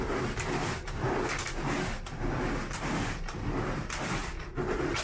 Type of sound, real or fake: real